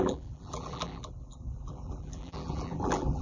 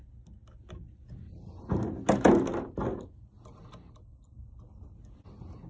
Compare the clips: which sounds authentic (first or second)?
second